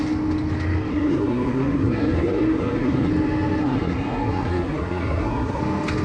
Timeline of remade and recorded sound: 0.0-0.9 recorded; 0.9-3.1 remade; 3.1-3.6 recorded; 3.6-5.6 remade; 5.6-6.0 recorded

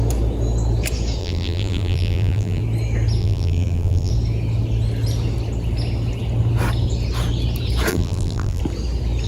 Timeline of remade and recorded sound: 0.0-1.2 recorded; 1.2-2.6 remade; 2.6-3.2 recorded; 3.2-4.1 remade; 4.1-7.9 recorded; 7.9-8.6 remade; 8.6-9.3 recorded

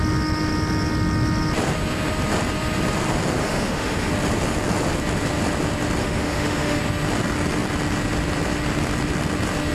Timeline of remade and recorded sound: 0.0-3.4 recorded; 3.4-4.1 remade; 4.1-6.0 recorded; 6.0-6.8 remade; 6.8-9.7 recorded

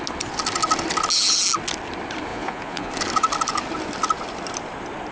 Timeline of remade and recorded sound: 0.0-2.3 recorded; 2.3-2.9 remade; 2.9-5.1 recorded

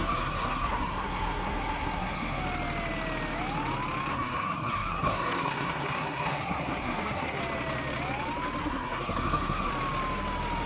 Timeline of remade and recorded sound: 0.0-2.4 remade; 2.4-4.1 recorded; 4.1-7.4 remade; 7.4-8.6 recorded; 8.6-9.7 remade; 9.7-10.7 recorded

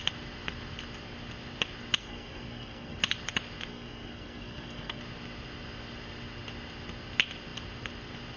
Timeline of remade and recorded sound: 0.0-2.0 recorded; 2.0-3.0 remade; 3.0-3.7 recorded; 3.7-5.0 remade; 5.0-8.4 recorded